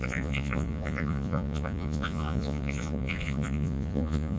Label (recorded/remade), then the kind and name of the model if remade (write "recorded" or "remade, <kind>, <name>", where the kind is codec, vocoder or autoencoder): remade, vocoder, Vocos